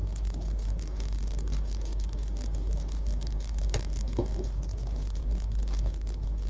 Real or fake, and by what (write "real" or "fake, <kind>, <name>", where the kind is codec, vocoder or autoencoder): fake, codec, DAC